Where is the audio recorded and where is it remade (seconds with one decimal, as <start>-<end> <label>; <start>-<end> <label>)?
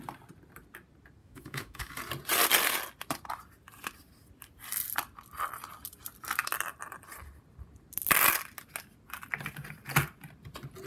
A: 0.0-1.2 recorded; 1.2-1.9 remade; 1.9-10.9 recorded